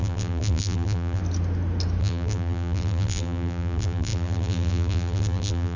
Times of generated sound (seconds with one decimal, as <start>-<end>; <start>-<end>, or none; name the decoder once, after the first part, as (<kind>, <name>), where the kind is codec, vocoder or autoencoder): 0.0-1.2 (vocoder, BigVGAN v2); 2.0-5.8